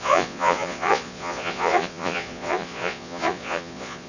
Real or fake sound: fake